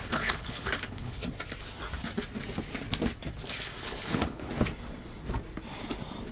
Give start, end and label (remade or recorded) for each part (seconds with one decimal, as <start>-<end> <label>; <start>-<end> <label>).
0.0-1.2 remade; 1.2-3.8 recorded; 3.8-4.5 remade; 4.5-6.3 recorded